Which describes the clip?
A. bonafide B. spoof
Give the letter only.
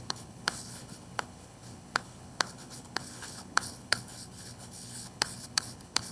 B